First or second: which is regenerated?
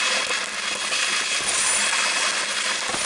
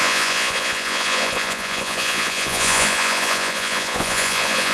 second